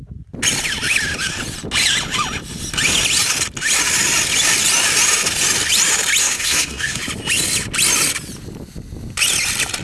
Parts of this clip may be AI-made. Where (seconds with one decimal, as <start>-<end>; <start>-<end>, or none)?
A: 6.2-7.0